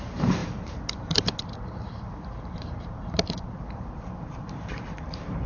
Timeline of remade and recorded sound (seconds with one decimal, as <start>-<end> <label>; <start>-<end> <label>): 0.0-5.5 remade

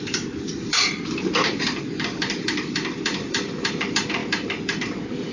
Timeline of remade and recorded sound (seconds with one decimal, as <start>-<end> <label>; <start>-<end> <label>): 0.0-5.3 remade

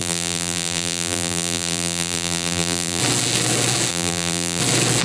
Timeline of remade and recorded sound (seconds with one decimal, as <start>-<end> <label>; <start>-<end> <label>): 0.0-3.0 remade; 3.0-3.9 recorded; 3.9-4.6 remade; 4.6-5.0 recorded

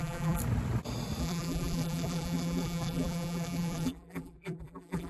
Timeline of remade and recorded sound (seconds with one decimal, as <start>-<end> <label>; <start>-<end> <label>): 0.0-0.4 remade; 0.4-1.2 recorded; 1.2-5.1 remade